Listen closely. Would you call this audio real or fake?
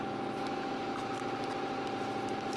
real